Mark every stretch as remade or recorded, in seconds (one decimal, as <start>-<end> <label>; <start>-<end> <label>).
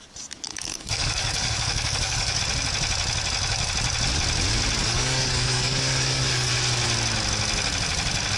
0.0-0.5 recorded; 0.5-2.4 remade; 2.4-4.8 recorded; 4.8-6.5 remade; 6.5-8.4 recorded